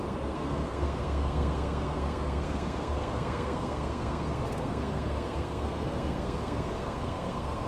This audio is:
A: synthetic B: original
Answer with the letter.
A